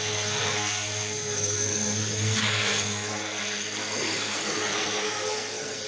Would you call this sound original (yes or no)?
no